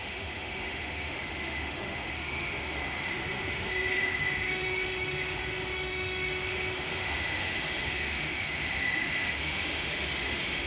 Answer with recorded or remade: remade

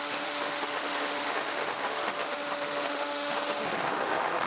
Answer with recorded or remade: remade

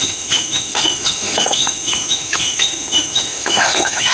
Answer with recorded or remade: remade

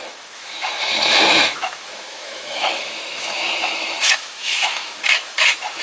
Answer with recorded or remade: remade